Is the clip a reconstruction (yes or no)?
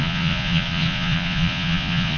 yes